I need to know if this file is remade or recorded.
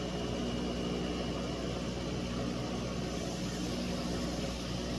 recorded